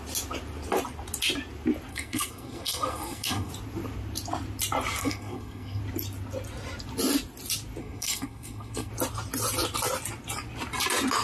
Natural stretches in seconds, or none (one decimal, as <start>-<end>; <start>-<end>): 0.0-1.9; 3.5-5.0; 5.8-7.8; 8.9-11.2